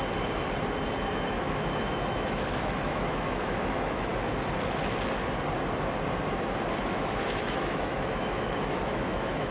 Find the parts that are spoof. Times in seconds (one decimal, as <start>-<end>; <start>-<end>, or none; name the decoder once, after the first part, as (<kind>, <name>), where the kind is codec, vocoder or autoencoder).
1.1-4.1 (autoencoder, DAC-VAE); 6.8-9.5